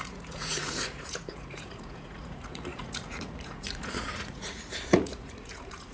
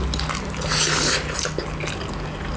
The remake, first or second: first